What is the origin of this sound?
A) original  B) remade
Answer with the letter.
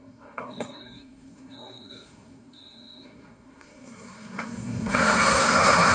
B